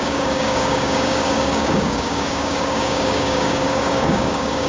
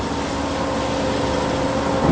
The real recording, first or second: second